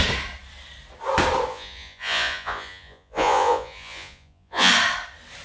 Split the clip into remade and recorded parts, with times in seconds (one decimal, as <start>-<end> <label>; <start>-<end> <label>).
0.0-1.5 recorded; 1.5-4.7 remade; 4.7-5.4 recorded